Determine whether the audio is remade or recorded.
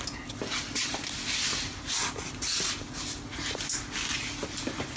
recorded